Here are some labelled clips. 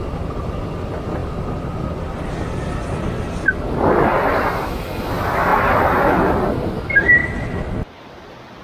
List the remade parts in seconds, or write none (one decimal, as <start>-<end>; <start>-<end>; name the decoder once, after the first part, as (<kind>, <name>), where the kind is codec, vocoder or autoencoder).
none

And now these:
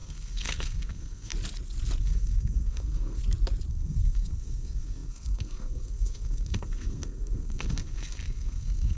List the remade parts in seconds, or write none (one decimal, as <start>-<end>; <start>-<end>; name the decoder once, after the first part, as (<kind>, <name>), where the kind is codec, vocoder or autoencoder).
0.0-1.3 (codec, SNAC); 2.0-3.2; 3.7-9.0

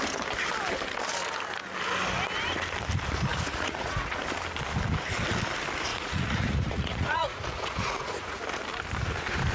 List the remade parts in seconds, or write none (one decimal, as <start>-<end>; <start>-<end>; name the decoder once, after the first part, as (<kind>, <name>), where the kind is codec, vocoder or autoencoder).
3.3-4.2 (vocoder, Vocos); 5.9-8.4

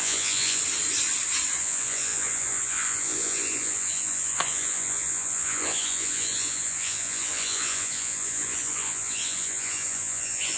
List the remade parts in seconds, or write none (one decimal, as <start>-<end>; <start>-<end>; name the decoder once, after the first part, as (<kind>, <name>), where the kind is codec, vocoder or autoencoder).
0.0-0.6 (vocoder, Vocos); 1.6-10.6

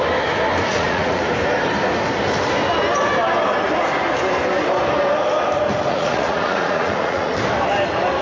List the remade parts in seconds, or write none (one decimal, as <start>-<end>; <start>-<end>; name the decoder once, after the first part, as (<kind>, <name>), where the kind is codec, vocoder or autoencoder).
0.7-1.2 (vocoder, Vocos); 5.9-7.3

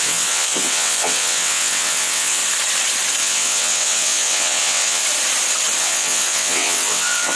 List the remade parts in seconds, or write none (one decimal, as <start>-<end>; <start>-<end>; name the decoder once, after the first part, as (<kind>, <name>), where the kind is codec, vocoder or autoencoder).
0.0-2.4 (vocoder, WaveNeXt); 3.2-5.0; 5.8-7.4

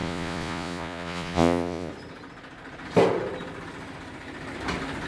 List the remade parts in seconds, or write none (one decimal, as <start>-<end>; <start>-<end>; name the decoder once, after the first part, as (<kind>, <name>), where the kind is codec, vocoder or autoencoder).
0.0-1.9 (vocoder, Vocos)